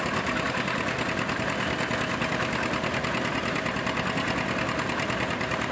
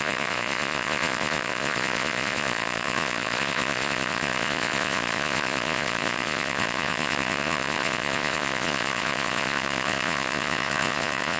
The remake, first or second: second